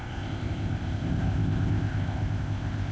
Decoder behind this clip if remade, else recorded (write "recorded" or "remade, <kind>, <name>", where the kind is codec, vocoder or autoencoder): remade, codec, ZipCodec